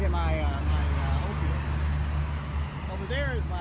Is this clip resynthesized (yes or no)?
no